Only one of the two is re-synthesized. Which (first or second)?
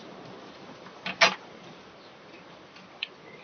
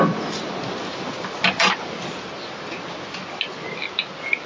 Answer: first